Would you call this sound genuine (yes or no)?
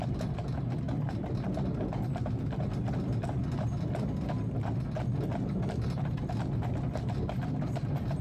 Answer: yes